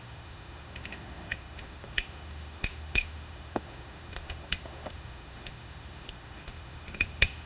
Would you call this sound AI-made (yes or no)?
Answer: yes